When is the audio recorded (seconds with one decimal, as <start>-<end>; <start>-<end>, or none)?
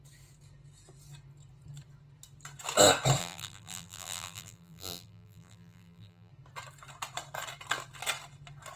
0.0-3.2; 6.3-8.8